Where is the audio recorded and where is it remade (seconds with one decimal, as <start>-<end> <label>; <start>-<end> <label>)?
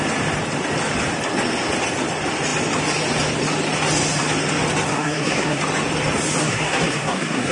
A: 0.0-4.9 recorded; 4.9-5.6 remade; 5.6-6.4 recorded; 6.4-7.5 remade